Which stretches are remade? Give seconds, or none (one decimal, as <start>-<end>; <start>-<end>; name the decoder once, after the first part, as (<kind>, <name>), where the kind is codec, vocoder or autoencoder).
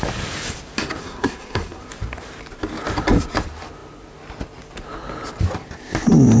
1.0-1.8 (codec, SNAC)